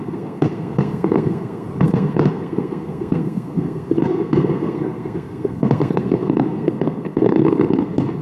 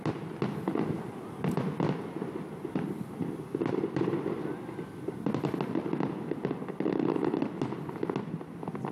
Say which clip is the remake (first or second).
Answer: first